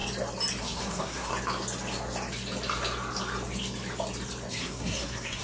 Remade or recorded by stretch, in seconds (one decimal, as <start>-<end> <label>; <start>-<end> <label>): 0.0-0.6 recorded; 0.6-1.3 remade; 1.3-4.5 recorded; 4.5-5.4 remade